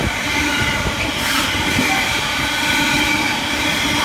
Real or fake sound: real